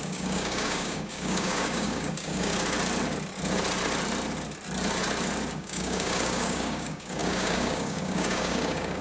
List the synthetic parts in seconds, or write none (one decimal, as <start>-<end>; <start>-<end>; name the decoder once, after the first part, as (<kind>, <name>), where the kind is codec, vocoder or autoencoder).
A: 0.0-2.5 (codec, DAC); 5.5-9.0